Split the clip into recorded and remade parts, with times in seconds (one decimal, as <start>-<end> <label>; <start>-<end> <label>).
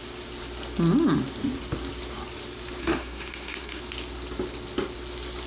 0.0-2.8 recorded; 2.8-3.8 remade; 3.8-5.5 recorded